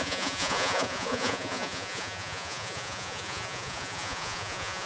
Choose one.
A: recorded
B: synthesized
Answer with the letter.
B